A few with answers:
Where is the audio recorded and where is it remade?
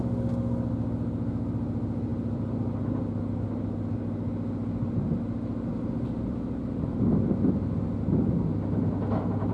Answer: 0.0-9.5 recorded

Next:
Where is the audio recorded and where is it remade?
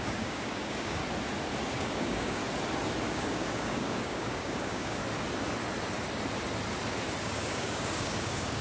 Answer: 0.0-1.0 remade; 1.0-1.7 recorded; 1.7-2.4 remade; 2.4-3.0 recorded; 3.0-5.0 remade; 5.0-7.2 recorded; 7.2-8.6 remade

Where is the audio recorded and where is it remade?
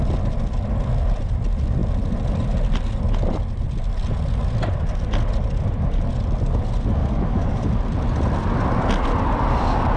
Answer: 0.0-7.0 recorded; 7.0-7.7 remade; 7.7-10.0 recorded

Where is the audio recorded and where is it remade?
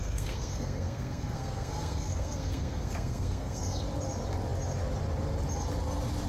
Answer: 0.0-3.8 remade; 3.8-6.3 recorded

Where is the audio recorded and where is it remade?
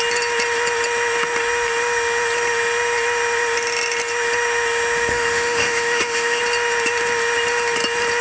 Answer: 0.0-5.1 recorded; 5.1-6.4 remade; 6.4-8.2 recorded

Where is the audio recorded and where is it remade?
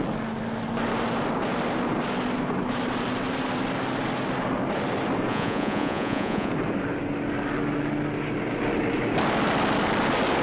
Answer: 0.0-5.3 recorded; 5.3-6.5 remade; 6.5-10.4 recorded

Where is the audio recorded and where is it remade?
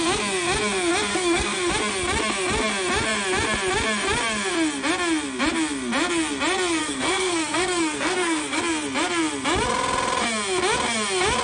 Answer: 0.0-1.1 recorded; 1.1-1.7 remade; 1.7-6.8 recorded; 6.8-8.6 remade; 8.6-11.4 recorded